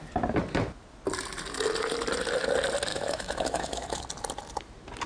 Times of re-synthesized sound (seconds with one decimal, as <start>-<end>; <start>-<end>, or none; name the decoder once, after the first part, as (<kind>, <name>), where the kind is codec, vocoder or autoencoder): 2.9-4.0 (autoencoder, DAC-VAE)